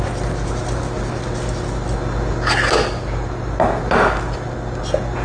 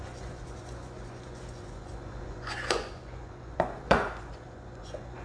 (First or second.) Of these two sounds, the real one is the first